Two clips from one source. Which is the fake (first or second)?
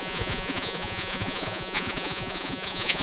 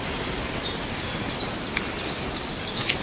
first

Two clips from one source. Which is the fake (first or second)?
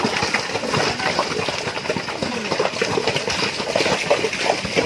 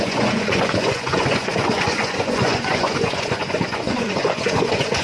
second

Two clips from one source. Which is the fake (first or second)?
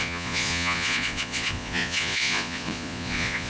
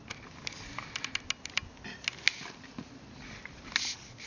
first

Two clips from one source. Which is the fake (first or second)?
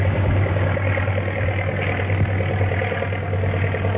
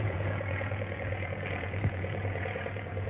second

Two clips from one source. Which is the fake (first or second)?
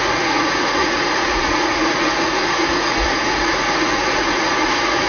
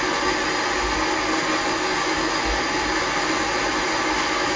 first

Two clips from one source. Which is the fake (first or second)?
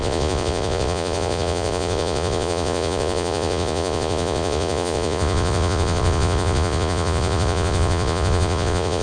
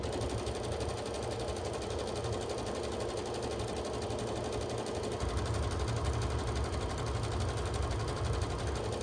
first